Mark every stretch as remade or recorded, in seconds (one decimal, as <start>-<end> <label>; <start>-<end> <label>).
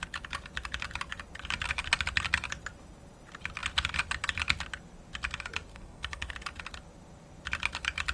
0.0-5.7 recorded; 5.7-6.3 remade; 6.3-8.1 recorded